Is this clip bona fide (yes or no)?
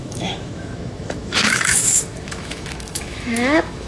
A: no